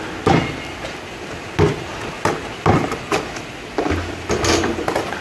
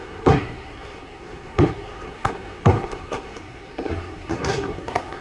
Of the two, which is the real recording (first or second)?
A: first